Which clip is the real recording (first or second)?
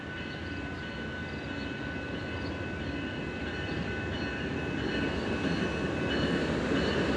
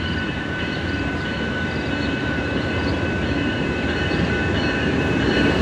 first